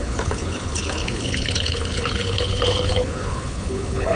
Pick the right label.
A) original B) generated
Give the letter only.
B